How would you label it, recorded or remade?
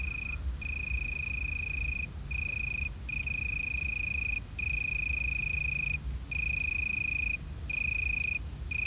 recorded